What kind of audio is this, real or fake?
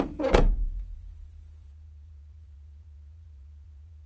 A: fake